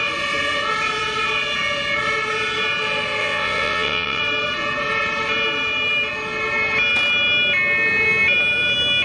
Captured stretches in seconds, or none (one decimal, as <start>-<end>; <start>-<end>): 0.0-3.2; 4.2-9.0